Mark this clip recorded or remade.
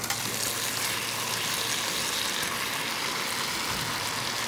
recorded